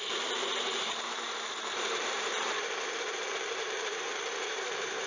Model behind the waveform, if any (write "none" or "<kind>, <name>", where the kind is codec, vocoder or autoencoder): vocoder, BigVGAN v2